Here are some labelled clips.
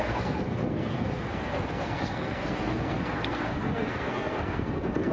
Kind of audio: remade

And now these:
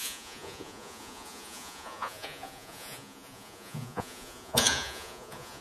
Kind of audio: remade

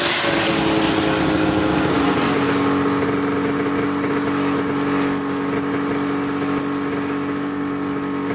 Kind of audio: recorded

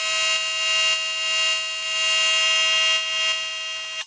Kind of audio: recorded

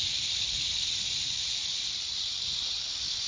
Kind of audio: remade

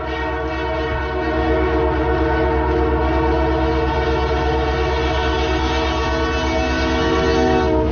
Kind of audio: recorded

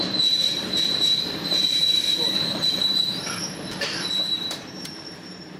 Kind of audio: remade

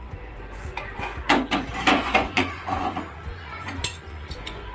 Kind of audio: remade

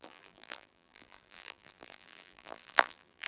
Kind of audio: remade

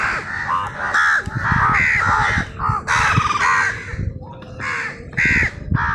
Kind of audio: recorded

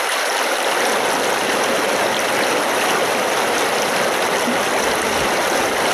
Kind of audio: recorded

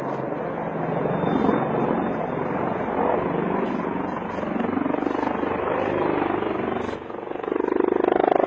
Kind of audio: recorded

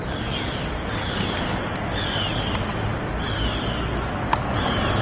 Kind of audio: recorded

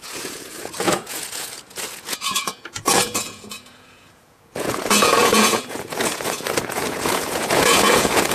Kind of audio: remade